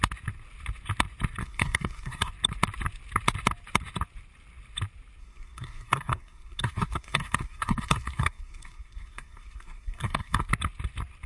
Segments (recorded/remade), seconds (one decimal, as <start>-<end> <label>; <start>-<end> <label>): 0.0-1.4 recorded; 1.4-2.3 remade; 2.3-5.2 recorded; 5.2-10.5 remade; 10.5-11.3 recorded